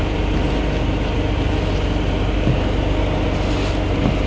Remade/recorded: recorded